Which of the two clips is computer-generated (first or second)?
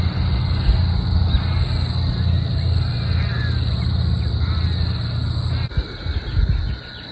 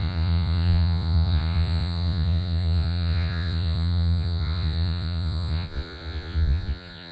second